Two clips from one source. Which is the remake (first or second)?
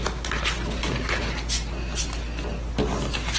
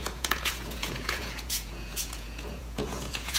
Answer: second